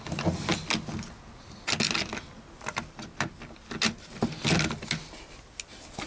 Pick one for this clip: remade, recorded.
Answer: recorded